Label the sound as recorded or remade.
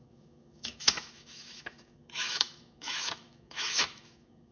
remade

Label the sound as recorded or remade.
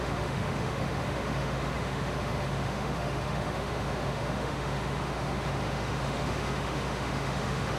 remade